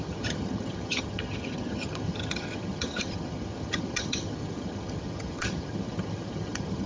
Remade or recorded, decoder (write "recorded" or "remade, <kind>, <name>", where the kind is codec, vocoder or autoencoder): remade, vocoder, HiFi-GAN